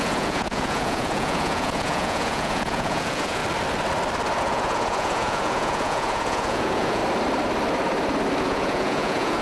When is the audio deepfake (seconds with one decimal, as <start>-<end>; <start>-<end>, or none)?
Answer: 0.0-3.4; 4.4-7.0; 8.4-9.4